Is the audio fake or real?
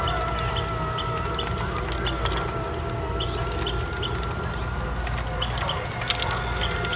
real